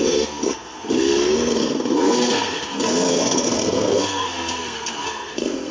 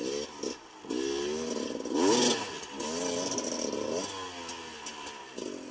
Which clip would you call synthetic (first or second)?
first